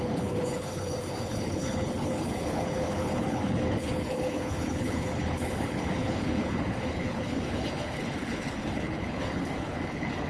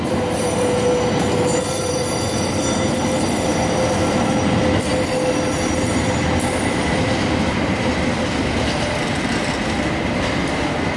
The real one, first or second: second